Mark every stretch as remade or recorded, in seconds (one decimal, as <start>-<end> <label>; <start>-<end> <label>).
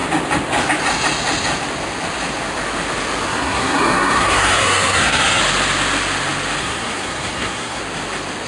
0.0-3.3 recorded; 3.3-5.4 remade; 5.4-6.6 recorded; 6.6-7.8 remade; 7.8-8.5 recorded